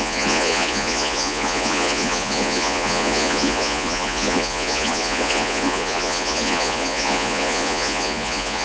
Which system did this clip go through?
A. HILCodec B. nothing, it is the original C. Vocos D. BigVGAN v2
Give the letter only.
C